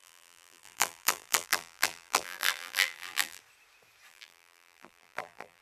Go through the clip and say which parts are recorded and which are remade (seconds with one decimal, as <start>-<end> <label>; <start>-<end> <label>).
0.0-3.4 remade; 3.4-4.1 recorded; 4.1-5.6 remade

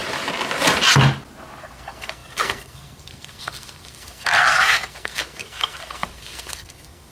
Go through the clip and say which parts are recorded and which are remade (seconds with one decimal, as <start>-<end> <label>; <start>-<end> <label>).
0.0-1.6 recorded; 1.6-7.1 remade

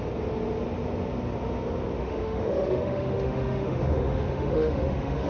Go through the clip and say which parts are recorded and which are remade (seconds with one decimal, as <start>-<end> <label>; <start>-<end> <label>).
0.0-2.0 recorded; 2.0-5.3 remade

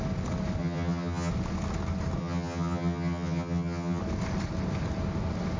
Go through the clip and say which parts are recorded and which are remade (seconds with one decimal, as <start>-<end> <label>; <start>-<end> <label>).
0.0-0.6 recorded; 0.6-1.3 remade; 1.3-2.2 recorded; 2.2-4.0 remade; 4.0-5.6 recorded